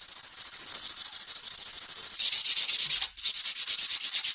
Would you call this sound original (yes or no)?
yes